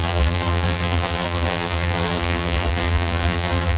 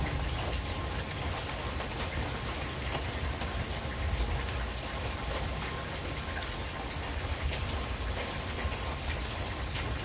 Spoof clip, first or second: first